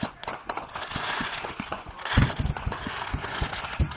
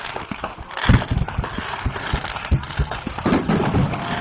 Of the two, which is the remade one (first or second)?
first